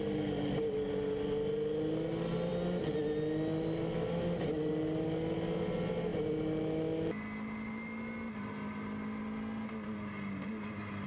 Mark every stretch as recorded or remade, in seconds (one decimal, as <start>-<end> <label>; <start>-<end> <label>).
0.0-11.1 recorded